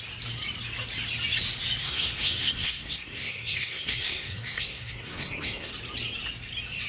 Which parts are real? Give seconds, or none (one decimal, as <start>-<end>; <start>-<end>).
0.0-1.8; 5.7-6.9